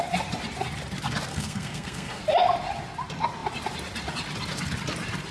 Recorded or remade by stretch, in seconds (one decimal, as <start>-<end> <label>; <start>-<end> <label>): 0.0-1.3 recorded; 1.3-2.2 remade; 2.2-5.3 recorded